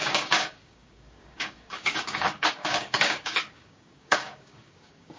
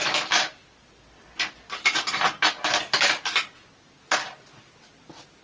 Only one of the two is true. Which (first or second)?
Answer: second